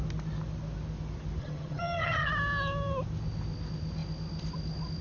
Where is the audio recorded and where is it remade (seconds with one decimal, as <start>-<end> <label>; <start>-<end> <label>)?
0.0-1.4 recorded; 1.4-2.3 remade; 2.3-5.0 recorded